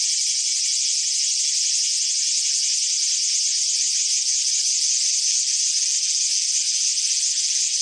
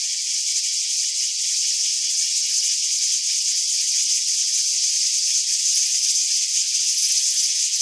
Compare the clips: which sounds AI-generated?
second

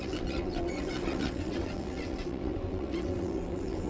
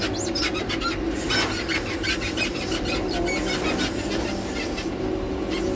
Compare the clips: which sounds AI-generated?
first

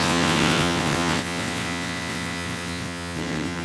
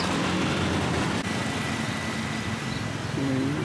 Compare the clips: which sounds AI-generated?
first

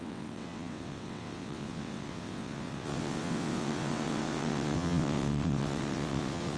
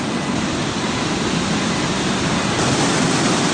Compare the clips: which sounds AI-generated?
first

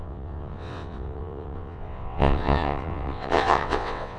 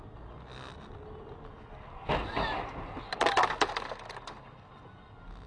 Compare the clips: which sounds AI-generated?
first